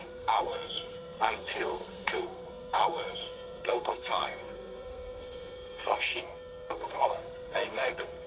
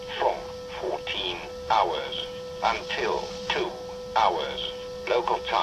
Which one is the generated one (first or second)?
first